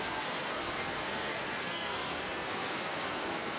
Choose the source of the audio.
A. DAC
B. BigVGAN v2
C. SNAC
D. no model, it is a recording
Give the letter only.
C